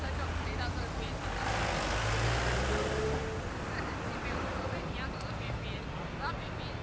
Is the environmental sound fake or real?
real